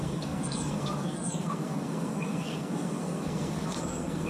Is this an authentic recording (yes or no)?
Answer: no